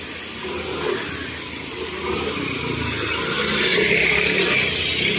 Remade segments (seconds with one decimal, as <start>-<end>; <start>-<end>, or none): 3.7-4.5